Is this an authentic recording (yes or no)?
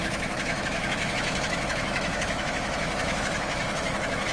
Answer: no